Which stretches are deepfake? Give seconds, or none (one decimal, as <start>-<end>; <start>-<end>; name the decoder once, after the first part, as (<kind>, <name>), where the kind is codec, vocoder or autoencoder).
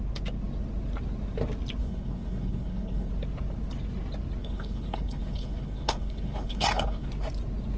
1.8-3.1 (codec, HILCodec); 4.4-7.1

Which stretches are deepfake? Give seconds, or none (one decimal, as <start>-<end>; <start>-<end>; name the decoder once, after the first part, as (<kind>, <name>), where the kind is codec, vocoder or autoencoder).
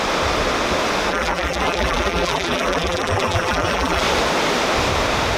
1.1-4.0 (vocoder, BigVGAN v2)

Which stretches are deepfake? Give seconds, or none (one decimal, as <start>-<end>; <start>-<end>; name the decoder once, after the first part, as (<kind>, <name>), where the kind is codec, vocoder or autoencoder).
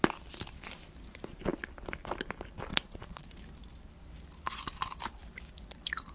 2.7-3.4 (vocoder, Vocos)